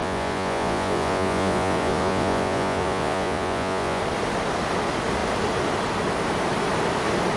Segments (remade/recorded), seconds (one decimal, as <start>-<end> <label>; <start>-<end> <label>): 0.0-4.0 remade; 4.0-7.4 recorded